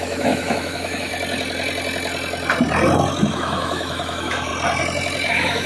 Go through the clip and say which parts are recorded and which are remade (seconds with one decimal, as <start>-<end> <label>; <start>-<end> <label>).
0.0-1.1 remade; 1.1-3.3 recorded; 3.3-4.5 remade; 4.5-5.3 recorded; 5.3-5.7 remade